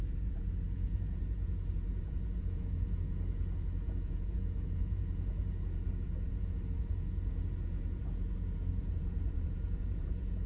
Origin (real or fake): fake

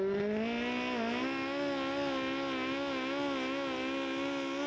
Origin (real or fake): real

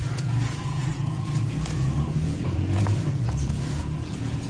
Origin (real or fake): fake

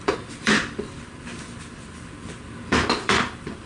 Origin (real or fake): fake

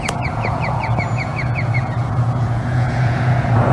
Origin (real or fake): fake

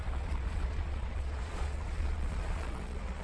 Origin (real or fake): fake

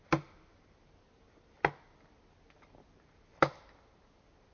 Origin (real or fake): real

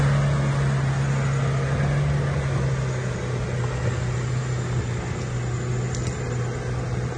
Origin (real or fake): real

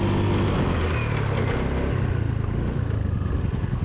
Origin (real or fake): real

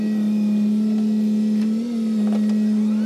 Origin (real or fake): real